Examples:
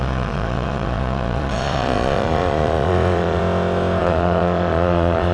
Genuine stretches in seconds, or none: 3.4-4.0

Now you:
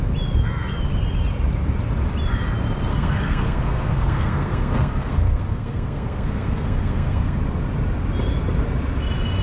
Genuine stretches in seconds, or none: 0.0-2.9; 7.4-9.4

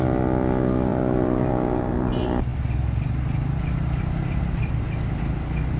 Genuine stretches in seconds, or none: 0.0-0.9; 1.5-2.5; 4.8-5.8